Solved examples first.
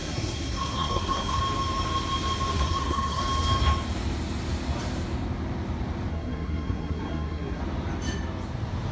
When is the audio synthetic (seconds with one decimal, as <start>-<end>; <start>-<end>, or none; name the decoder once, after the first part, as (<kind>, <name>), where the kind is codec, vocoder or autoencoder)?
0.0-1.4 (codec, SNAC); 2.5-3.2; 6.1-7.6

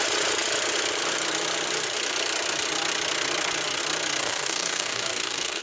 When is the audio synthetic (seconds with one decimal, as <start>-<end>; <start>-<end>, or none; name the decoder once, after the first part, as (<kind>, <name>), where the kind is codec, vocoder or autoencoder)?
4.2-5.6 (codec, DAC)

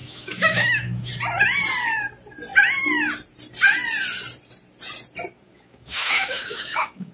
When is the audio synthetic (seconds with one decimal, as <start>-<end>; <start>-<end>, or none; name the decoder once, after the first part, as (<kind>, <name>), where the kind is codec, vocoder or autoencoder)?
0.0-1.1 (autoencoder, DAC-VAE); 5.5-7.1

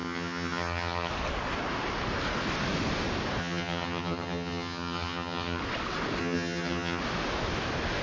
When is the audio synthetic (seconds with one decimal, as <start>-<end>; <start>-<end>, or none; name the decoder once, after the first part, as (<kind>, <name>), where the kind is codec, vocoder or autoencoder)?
0.0-1.1 (vocoder, HiFi-GAN); 3.4-5.6; 6.2-7.0

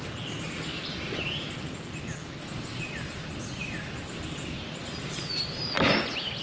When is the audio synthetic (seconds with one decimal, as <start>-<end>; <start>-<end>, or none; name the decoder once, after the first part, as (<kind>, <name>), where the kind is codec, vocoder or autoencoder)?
none